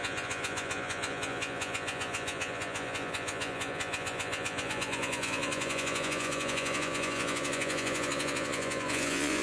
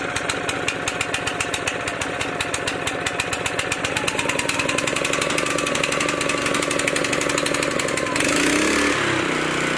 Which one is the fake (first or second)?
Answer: first